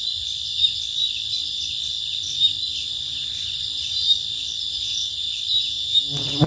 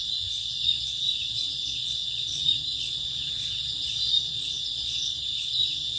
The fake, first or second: second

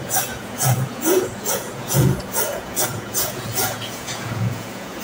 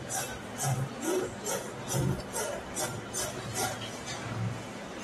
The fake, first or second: first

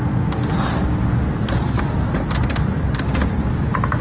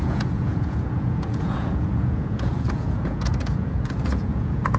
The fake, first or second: second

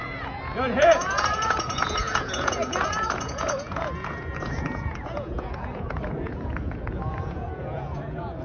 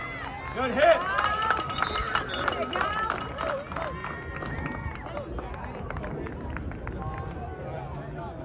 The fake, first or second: first